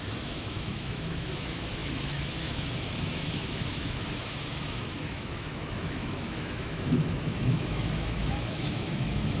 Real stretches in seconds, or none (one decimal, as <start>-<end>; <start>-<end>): none